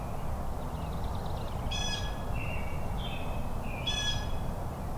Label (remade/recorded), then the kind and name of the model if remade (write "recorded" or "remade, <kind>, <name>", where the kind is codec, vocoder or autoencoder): recorded